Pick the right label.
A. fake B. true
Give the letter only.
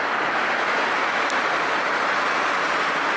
B